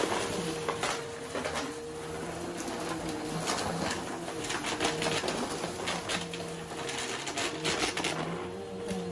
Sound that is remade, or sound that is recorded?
recorded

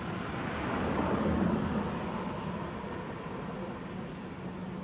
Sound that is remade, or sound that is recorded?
recorded